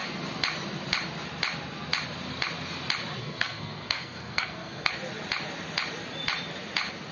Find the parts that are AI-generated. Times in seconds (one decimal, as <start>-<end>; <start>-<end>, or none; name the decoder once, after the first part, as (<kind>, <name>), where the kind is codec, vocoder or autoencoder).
3.2-4.9 (codec, SNAC)